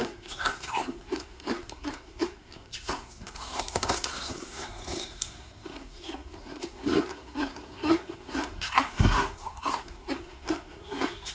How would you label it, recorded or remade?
remade